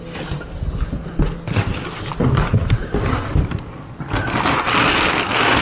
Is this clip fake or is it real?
real